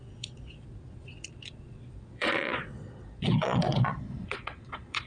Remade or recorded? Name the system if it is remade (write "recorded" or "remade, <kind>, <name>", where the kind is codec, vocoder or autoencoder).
remade, vocoder, Vocos